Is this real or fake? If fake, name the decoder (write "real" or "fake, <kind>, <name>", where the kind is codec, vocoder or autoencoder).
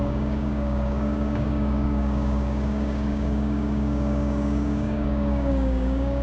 fake, codec, DAC